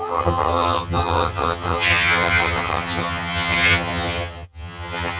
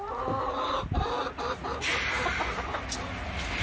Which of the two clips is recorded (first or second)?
second